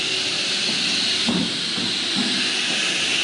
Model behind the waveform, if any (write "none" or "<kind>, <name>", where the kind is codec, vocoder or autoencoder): none